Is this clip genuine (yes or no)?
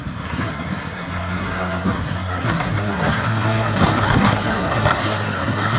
no